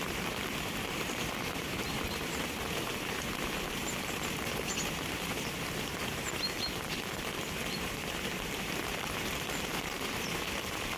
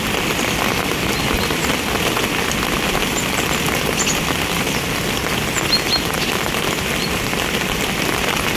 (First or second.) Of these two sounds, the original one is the second